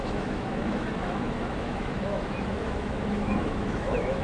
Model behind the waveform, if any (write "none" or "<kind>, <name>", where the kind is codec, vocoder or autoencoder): autoencoder, DAC-VAE